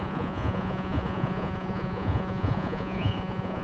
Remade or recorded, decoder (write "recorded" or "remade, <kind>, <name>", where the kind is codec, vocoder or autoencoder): remade, vocoder, Vocos